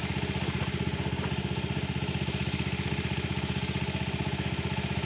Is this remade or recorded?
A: recorded